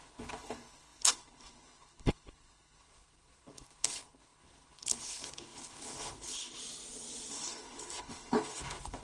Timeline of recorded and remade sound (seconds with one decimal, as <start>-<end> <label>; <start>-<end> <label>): 0.0-6.6 remade; 6.6-7.3 recorded; 7.3-9.0 remade